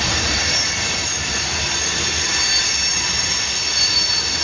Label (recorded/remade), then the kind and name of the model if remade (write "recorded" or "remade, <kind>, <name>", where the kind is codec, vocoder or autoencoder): recorded